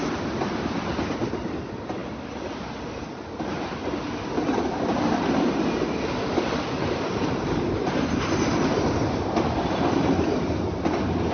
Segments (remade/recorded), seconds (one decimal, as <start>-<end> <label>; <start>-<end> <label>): 0.0-11.3 recorded